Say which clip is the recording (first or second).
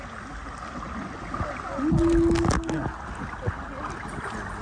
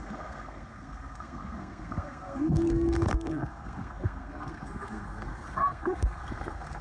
first